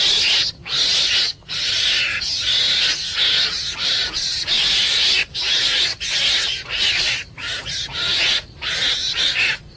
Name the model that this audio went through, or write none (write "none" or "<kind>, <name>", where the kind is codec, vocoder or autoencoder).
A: none